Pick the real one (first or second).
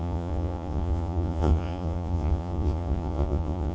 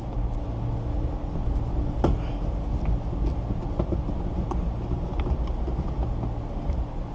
second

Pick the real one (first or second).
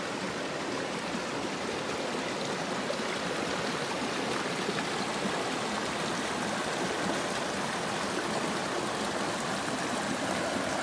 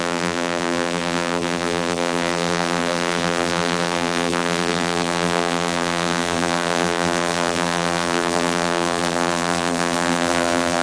first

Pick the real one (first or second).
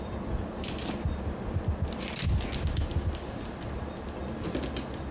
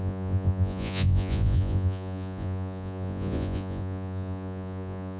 first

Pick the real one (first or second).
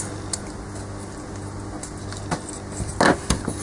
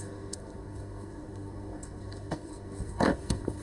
first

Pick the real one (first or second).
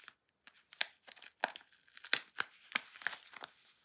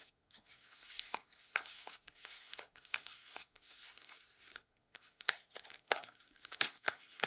first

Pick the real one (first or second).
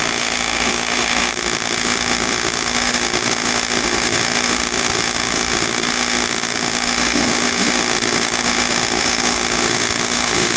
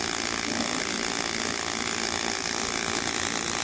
second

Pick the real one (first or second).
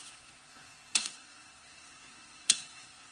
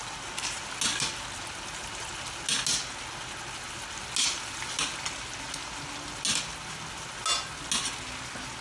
second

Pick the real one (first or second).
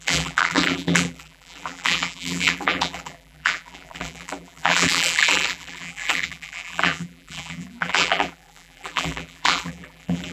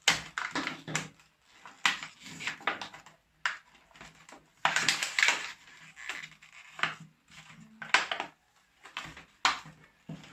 second